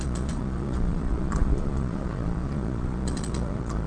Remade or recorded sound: remade